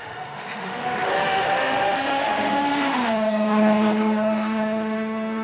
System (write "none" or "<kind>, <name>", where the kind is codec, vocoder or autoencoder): autoencoder, DAC-VAE